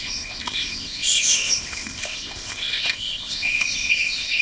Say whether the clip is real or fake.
fake